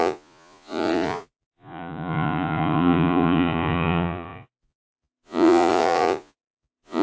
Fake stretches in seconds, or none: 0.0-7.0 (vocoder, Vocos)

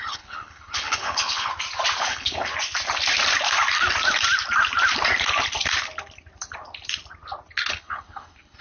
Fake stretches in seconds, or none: 0.0-1.5 (codec, HILCodec); 2.0-2.5; 7.7-8.6

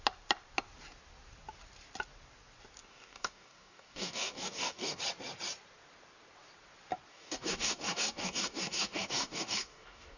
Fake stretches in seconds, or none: 2.9-5.0 (codec, DAC); 7.1-10.2

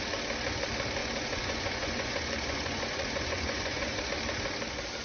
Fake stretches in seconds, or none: 1.0-4.0 (vocoder, Vocos)